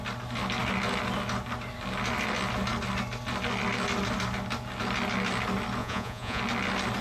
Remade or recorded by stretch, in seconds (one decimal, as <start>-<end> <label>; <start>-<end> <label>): 0.0-5.8 recorded; 5.8-6.4 remade; 6.4-7.0 recorded